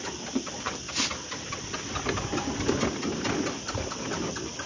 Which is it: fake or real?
real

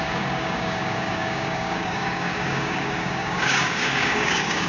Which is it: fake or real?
fake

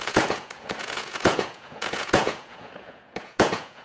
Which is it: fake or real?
fake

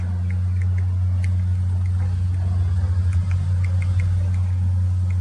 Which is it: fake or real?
real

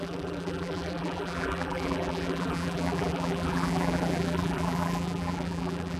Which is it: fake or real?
fake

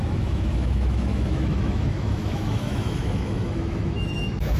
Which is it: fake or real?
fake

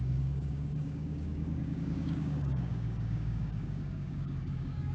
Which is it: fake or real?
fake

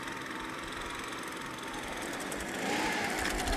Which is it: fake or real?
fake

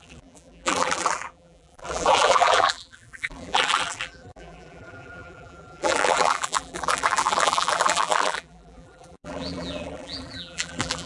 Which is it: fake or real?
fake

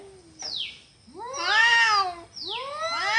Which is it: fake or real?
real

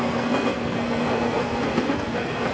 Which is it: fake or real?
fake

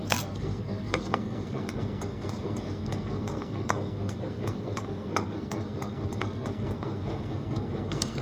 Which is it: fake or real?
fake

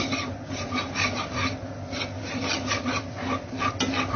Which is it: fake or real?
real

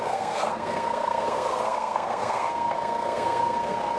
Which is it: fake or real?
fake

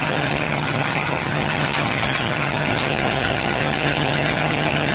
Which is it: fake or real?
fake